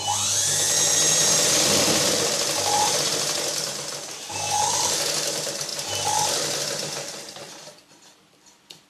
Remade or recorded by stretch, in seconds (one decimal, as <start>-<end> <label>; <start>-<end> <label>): 0.0-8.9 recorded